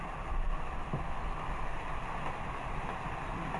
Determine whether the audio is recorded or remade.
recorded